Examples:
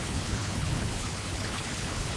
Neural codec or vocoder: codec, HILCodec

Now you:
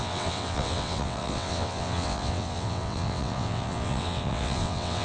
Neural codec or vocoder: vocoder, WaveNeXt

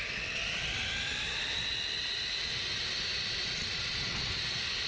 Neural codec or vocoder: none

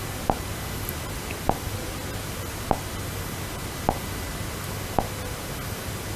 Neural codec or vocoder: none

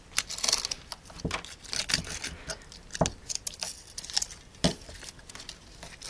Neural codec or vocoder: none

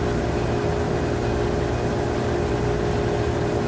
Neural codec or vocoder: none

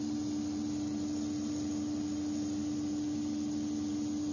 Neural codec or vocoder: none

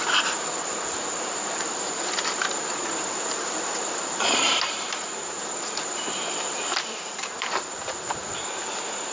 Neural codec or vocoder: vocoder, BigVGAN v2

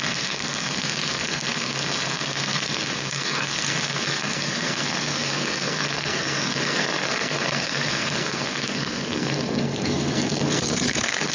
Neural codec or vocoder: codec, SNAC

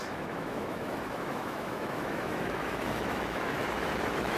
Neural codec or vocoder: autoencoder, DAC-VAE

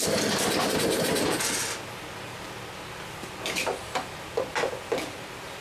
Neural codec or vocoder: none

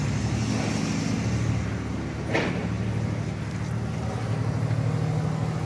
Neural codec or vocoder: none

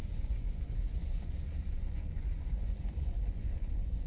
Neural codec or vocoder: vocoder, Vocos